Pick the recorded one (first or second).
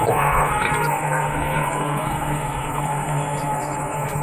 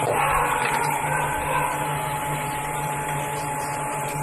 second